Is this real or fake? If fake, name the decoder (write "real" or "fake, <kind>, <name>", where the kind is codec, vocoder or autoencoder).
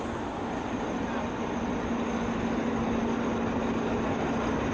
real